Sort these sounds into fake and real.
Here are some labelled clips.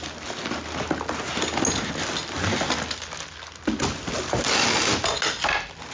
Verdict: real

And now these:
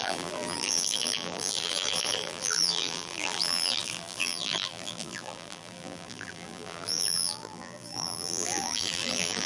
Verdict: fake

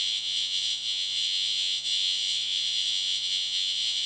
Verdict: fake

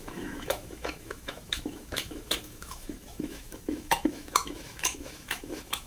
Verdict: fake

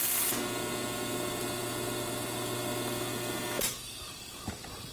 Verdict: real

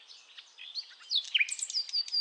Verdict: real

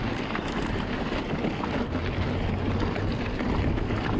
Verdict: real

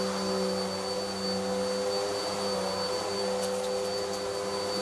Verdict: real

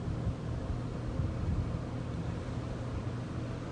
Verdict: real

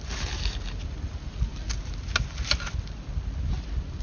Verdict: real